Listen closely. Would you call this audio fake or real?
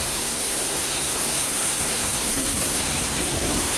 fake